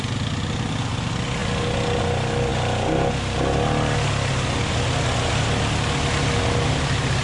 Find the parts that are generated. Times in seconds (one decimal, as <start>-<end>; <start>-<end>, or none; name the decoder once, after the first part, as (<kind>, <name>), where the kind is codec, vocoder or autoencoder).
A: none